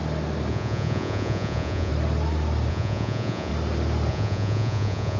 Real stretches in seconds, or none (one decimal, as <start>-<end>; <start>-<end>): 0.0-0.5; 1.9-2.7; 3.5-4.1